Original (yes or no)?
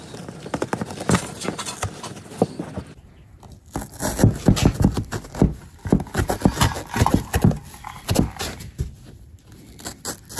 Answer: yes